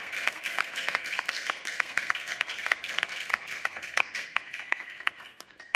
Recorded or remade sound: remade